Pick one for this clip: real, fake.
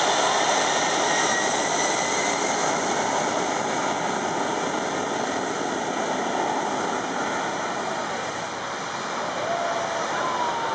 real